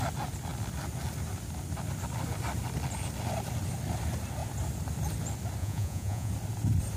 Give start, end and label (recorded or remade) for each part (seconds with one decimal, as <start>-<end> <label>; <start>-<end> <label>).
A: 0.0-5.6 recorded; 5.6-6.3 remade; 6.3-7.0 recorded

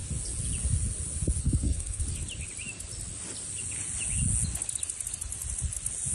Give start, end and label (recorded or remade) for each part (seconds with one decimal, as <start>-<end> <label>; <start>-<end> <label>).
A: 0.0-1.4 recorded; 1.4-2.0 remade; 2.0-6.1 recorded

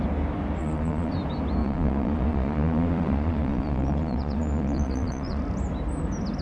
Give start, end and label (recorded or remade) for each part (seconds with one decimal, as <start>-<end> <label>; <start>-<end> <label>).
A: 0.0-0.6 recorded; 0.6-1.1 remade; 1.1-1.6 recorded; 1.6-5.4 remade; 5.4-6.4 recorded

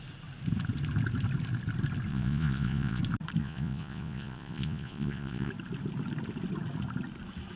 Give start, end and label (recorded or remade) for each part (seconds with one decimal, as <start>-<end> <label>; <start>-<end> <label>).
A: 0.0-2.1 recorded; 2.1-3.0 remade; 3.0-3.4 recorded; 3.4-5.5 remade; 5.5-7.6 recorded

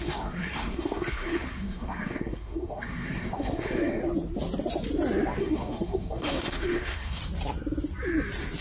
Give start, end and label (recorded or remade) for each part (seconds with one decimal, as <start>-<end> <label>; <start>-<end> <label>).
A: 0.0-4.0 remade; 4.0-5.4 recorded; 5.4-7.2 remade; 7.2-8.6 recorded